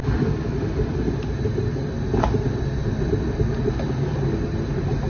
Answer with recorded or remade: recorded